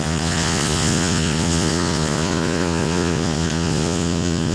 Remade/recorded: remade